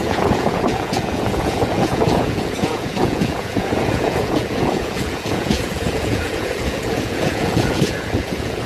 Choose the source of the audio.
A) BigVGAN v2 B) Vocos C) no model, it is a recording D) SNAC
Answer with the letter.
B